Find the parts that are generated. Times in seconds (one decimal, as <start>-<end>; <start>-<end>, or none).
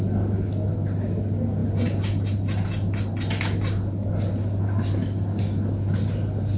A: none